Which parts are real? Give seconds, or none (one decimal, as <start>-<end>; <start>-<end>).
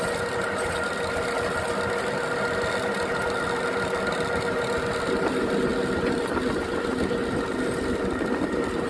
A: 0.0-8.9